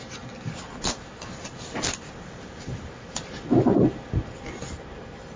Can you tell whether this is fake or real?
real